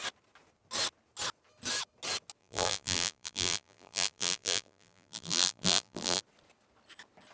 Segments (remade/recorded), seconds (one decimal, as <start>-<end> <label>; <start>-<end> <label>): 0.0-2.4 recorded; 2.4-6.2 remade; 6.2-7.3 recorded